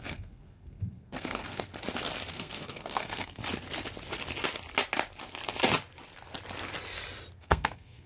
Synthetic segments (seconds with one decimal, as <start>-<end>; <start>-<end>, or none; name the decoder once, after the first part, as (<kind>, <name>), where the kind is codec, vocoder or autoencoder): 0.0-1.7 (codec, SNAC); 2.3-3.4; 7.4-8.1